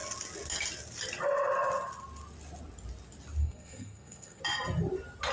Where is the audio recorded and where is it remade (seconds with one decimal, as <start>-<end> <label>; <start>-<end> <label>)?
0.0-3.4 recorded; 3.4-4.4 remade; 4.4-5.3 recorded